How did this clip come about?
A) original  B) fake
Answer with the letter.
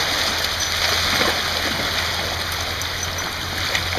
A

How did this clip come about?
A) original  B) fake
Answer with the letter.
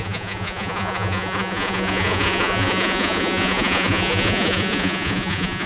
B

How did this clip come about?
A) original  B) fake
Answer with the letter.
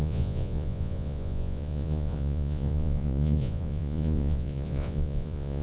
B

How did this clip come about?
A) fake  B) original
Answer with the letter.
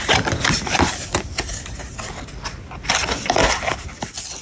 B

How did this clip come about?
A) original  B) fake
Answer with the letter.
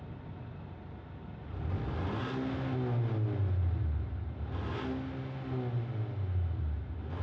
A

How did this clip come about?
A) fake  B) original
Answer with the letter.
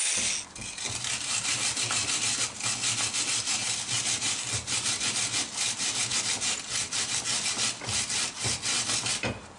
B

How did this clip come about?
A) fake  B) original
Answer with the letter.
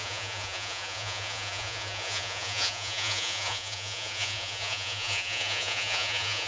A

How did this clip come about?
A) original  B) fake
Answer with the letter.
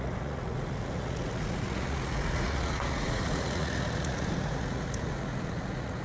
B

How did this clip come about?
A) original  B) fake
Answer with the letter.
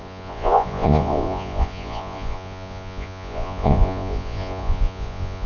B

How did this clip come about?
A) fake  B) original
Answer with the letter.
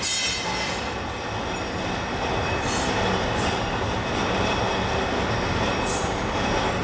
B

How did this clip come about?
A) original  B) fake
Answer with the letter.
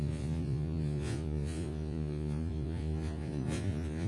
B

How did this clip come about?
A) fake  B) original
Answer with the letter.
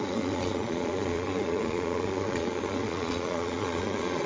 A